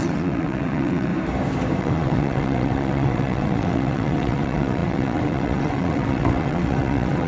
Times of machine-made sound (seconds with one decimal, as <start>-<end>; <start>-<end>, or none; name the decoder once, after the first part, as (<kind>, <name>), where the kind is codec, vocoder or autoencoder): 0.0-1.1 (vocoder, WaveNeXt); 1.8-7.3